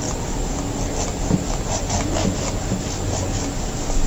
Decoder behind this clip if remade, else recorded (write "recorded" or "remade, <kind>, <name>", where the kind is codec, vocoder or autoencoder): recorded